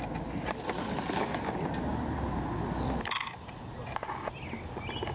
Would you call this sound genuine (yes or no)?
yes